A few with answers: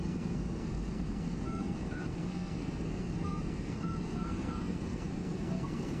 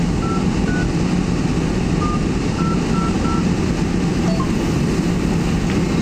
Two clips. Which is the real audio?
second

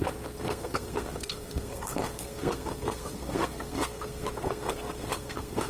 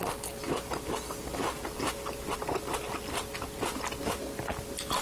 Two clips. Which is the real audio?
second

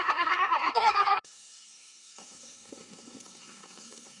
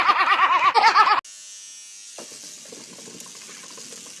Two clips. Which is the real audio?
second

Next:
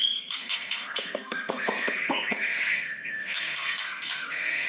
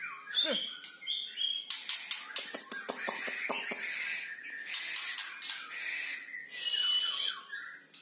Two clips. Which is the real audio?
second